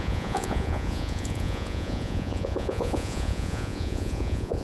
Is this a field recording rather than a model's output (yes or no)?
no